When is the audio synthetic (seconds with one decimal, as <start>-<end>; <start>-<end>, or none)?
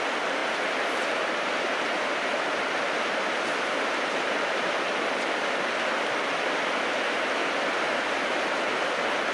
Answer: 0.4-2.8; 7.4-8.8